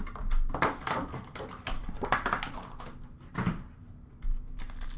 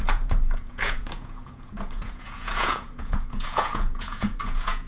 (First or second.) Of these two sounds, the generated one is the second